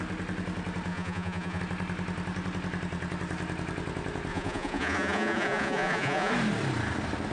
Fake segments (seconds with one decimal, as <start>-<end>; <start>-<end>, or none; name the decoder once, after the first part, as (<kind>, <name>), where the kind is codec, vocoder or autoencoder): 0.9-1.6 (vocoder, Vocos); 4.3-6.3